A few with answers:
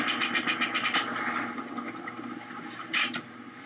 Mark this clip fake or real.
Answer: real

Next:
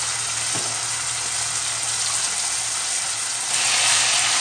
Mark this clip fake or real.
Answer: real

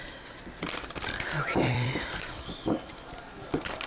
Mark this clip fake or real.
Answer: fake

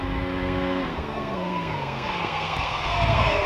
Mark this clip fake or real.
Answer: fake